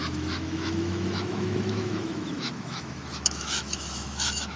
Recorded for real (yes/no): no